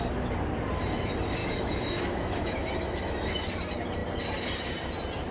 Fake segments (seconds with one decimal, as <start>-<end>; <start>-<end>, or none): 1.4-3.5